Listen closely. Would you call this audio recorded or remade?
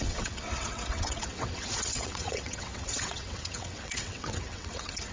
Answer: remade